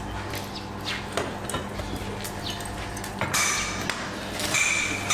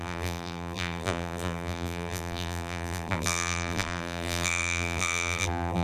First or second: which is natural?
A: first